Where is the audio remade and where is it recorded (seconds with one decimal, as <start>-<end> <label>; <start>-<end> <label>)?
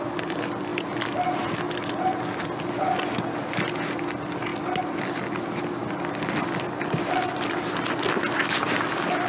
0.0-9.3 recorded